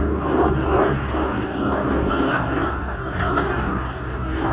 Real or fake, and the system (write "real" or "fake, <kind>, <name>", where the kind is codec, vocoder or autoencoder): fake, codec, DAC